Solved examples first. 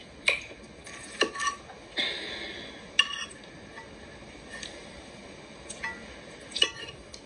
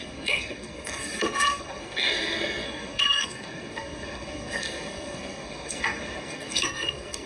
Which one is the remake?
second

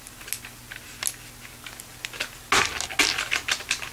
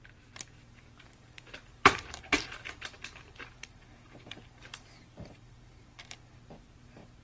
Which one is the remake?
second